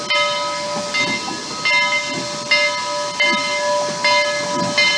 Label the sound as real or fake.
real